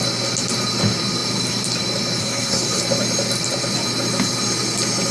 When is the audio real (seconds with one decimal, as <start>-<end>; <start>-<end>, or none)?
0.0-2.2; 2.8-5.1